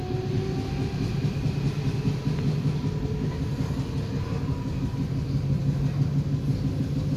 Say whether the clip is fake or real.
real